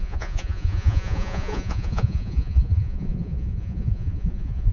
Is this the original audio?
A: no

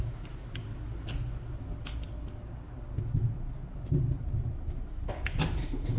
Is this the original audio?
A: yes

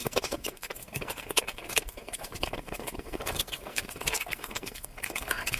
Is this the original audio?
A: no